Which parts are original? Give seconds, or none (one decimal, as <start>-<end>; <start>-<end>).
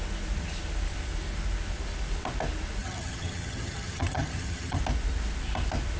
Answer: 0.0-2.8; 4.8-6.0